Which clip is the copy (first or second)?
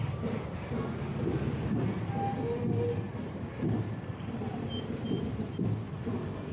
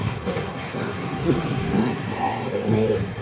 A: second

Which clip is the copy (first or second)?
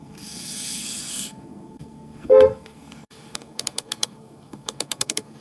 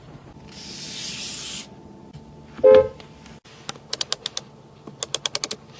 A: first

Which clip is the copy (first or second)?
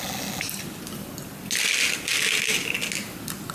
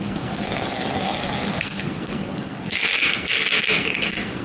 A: second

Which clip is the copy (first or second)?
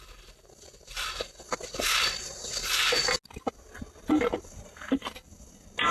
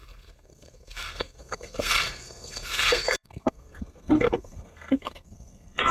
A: second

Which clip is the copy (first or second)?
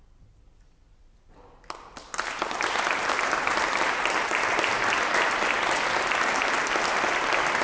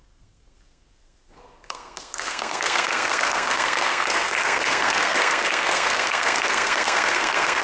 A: second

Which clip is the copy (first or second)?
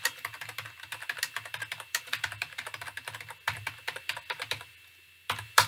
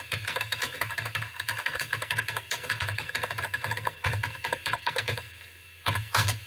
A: second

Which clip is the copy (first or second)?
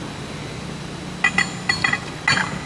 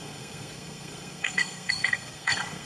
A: second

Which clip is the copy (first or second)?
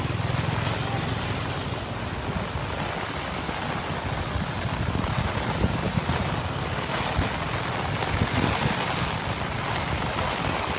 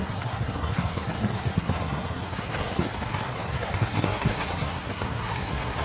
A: second